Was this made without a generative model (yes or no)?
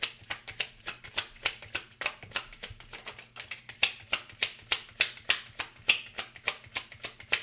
yes